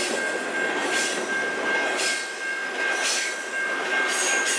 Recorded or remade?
recorded